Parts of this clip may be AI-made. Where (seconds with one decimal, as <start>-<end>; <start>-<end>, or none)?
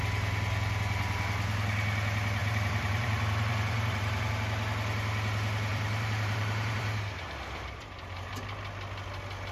2.4-4.3; 5.7-8.3